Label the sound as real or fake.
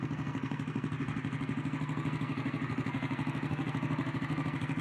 fake